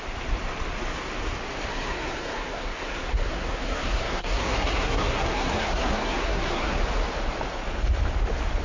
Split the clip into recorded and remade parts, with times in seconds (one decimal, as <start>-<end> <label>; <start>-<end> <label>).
0.0-1.7 recorded; 1.7-6.8 remade; 6.8-8.6 recorded